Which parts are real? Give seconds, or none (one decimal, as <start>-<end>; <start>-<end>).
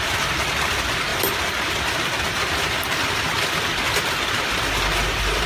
0.0-5.5